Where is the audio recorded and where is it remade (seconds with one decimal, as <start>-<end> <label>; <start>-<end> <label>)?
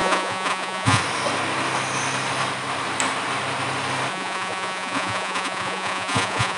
0.0-1.0 remade; 1.0-4.1 recorded; 4.1-6.6 remade